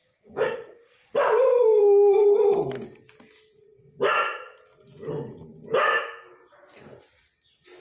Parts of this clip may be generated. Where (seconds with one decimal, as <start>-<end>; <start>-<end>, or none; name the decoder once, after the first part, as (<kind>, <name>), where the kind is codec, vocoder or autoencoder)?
0.0-1.1 (codec, DAC); 1.7-2.2